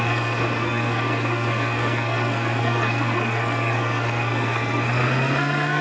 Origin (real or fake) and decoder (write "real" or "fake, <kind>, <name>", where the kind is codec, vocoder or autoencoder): fake, codec, SNAC